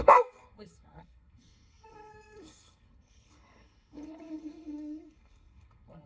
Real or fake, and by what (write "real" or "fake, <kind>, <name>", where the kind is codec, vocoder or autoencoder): fake, codec, SNAC